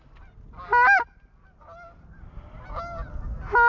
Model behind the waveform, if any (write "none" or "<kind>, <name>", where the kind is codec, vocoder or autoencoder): none